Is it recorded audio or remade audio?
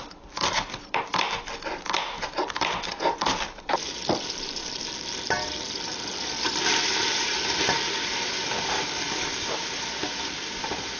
remade